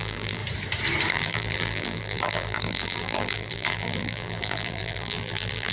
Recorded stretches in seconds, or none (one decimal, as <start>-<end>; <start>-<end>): 0.4-1.1